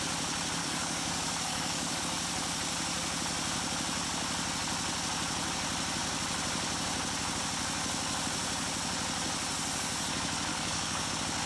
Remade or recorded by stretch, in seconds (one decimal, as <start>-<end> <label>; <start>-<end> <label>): 0.0-0.6 recorded; 0.6-2.0 remade; 2.0-10.5 recorded; 10.5-11.1 remade; 11.1-11.5 recorded